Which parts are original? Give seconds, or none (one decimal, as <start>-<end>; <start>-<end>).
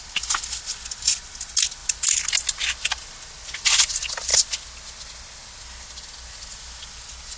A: 0.0-7.4